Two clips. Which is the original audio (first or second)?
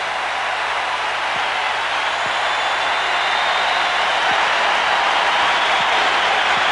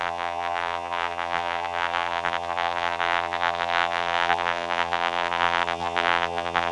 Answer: first